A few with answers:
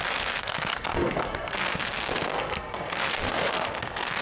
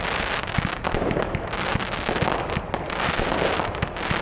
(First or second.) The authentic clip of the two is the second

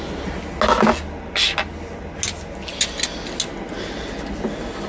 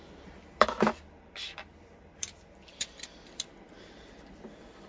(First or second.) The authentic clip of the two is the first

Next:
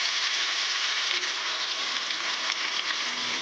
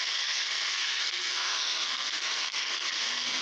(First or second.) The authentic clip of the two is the first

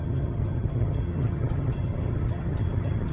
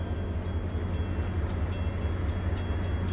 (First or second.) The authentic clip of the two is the second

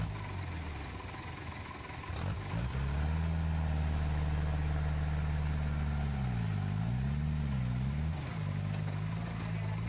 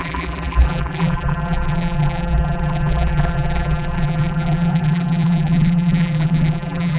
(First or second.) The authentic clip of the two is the first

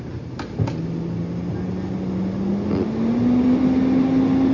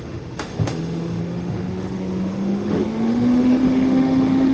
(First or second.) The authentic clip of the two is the first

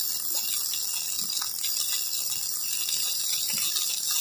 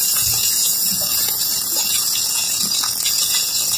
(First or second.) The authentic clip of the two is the first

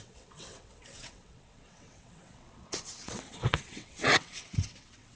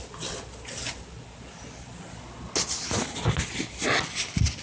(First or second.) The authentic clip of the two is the second